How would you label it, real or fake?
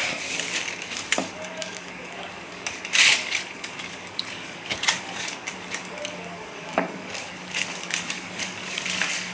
fake